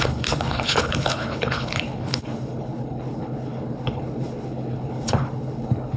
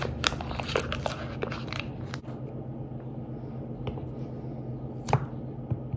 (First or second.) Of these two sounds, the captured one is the second